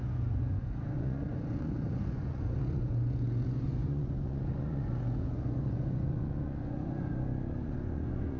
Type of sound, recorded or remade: remade